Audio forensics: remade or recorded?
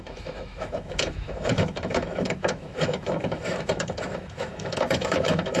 remade